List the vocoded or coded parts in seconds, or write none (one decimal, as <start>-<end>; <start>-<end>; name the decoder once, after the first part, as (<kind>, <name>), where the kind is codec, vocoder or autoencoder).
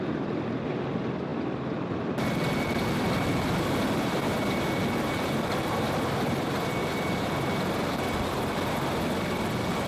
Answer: 1.3-4.8 (vocoder, BigVGAN v2); 6.8-7.7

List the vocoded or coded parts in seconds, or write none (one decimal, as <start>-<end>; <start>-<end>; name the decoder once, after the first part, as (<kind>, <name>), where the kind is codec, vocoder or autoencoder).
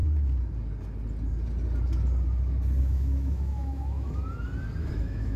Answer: 2.8-4.2 (autoencoder, DAC-VAE); 4.8-5.4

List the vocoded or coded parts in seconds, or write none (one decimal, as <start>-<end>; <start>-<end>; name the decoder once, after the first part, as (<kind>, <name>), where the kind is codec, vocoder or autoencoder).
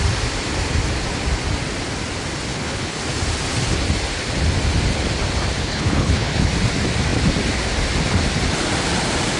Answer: 2.5-3.0 (codec, HILCodec); 5.6-6.5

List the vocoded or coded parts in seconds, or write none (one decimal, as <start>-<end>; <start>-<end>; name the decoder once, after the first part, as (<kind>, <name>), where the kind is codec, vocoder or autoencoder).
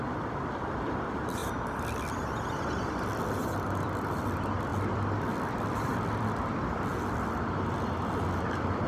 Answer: 0.0-8.9 (vocoder, BigVGAN v2)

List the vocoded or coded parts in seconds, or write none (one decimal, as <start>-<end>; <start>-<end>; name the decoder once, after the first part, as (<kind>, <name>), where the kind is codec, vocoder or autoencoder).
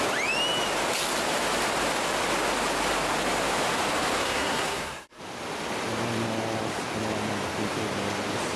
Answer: 4.2-5.2 (codec, SNAC)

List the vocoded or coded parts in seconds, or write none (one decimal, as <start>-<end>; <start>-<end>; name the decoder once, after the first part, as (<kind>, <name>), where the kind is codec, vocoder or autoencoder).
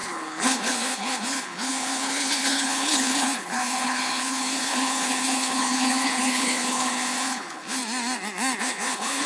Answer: 0.0-7.8 (codec, HILCodec); 8.6-9.3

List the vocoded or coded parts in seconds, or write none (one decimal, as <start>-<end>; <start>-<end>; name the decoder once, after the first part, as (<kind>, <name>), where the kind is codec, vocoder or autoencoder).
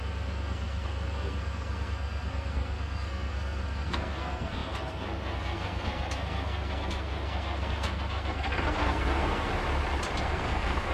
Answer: 0.0-9.5 (codec, SNAC); 10.2-10.9